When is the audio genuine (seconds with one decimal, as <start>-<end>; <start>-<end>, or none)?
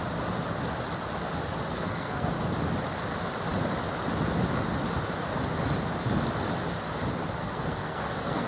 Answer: 0.0-1.7; 2.3-7.4